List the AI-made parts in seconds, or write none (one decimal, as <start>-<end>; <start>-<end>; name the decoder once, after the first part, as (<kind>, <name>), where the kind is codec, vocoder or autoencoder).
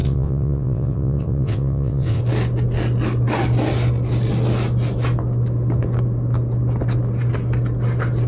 0.0-2.2 (vocoder, WaveNeXt)